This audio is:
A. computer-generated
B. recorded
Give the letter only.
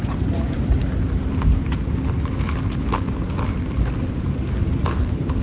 B